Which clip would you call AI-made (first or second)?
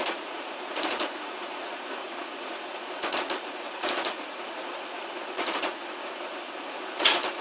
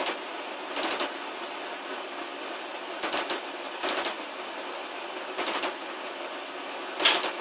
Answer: first